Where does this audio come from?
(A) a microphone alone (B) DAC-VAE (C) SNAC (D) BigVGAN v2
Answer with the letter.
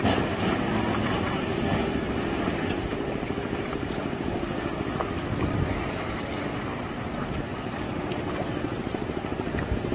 D